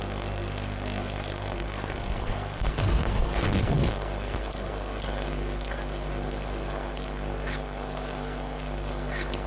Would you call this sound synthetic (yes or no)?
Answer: yes